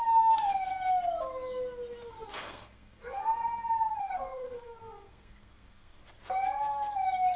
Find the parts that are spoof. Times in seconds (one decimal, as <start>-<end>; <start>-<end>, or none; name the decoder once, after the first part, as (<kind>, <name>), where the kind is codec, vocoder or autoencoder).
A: 0.0-0.7 (codec, SNAC); 2.1-3.4; 4.0-6.0